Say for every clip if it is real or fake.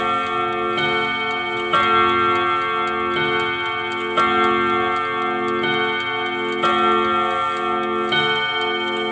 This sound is real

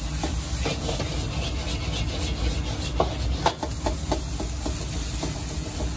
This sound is real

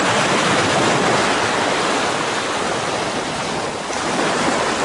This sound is real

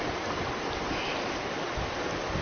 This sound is real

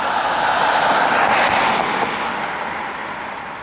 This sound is real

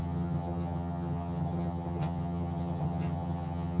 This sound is fake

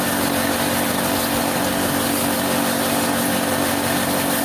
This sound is real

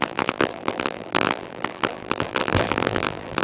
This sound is fake